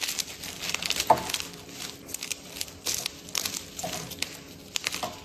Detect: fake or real real